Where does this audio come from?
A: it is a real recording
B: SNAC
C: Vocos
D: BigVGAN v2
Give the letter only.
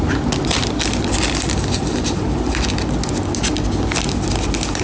A